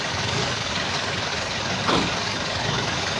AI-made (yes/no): yes